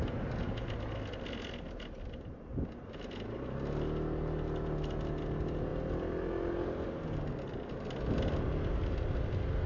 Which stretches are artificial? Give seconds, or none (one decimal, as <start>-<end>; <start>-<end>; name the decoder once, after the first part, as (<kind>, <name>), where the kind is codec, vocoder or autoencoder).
none

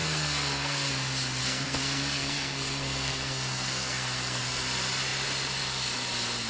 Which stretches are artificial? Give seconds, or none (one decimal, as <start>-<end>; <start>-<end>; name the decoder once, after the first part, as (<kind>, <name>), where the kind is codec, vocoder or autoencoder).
0.0-0.9 (codec, SNAC); 1.4-4.4

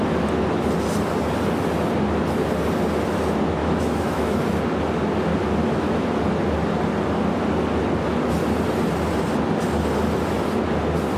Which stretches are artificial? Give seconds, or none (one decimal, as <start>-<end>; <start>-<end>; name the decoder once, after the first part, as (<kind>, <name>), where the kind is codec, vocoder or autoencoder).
3.6-4.4 (autoencoder, DAC-VAE); 5.6-6.2

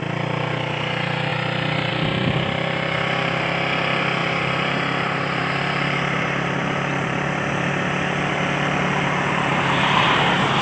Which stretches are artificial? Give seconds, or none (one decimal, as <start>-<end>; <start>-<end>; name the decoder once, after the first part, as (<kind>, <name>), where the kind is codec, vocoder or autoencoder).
4.2-7.7 (vocoder, BigVGAN v2); 9.5-10.1

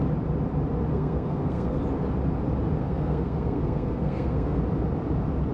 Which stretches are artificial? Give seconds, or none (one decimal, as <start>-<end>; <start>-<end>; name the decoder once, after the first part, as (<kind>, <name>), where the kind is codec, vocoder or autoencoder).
0.9-1.8 (codec, SNAC); 2.8-4.6

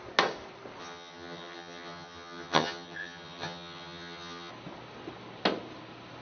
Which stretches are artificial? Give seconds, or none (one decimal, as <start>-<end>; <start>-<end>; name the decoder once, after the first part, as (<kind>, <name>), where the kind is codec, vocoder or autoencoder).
0.8-4.5 (vocoder, HiFi-GAN)

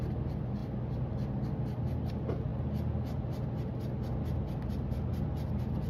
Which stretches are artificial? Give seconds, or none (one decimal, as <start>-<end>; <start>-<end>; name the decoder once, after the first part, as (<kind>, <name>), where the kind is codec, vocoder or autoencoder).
none

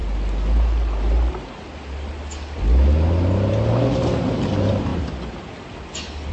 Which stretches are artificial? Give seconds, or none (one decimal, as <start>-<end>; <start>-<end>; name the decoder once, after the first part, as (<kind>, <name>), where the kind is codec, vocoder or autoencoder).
none